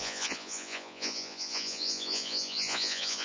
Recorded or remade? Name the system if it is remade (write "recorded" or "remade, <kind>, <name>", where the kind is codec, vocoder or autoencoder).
remade, vocoder, Vocos